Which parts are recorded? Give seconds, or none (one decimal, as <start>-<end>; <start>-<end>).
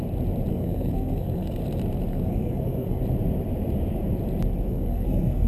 0.0-0.5; 1.6-2.1; 3.0-4.7